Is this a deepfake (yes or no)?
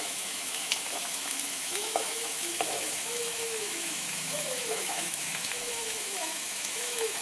yes